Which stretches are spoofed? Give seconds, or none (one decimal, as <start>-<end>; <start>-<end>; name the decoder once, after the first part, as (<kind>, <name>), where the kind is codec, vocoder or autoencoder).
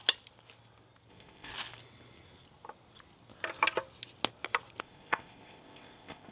1.1-1.5 (codec, ZipCodec); 4.8-6.3